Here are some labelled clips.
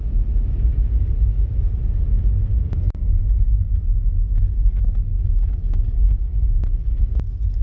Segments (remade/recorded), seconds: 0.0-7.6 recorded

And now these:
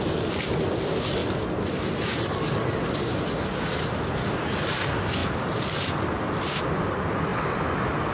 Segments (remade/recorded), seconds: 0.0-8.1 recorded